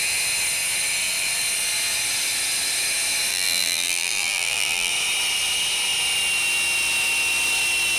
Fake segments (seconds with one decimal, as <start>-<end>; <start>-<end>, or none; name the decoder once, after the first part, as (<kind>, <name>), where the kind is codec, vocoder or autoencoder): 3.3-4.9 (vocoder, BigVGAN v2)